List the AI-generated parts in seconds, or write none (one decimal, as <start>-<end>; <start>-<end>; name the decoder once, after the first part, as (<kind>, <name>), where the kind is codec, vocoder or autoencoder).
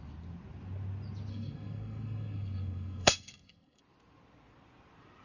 1.3-3.8 (codec, SNAC)